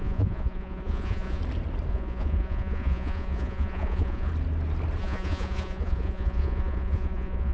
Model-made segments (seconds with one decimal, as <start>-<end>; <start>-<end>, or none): 0.0-1.4; 1.9-4.3; 5.0-7.5